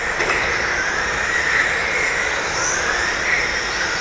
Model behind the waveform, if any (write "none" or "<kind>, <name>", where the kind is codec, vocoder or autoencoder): none